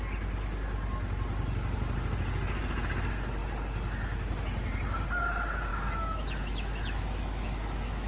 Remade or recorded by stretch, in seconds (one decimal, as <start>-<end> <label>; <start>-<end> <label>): 0.0-5.7 recorded; 5.7-8.1 remade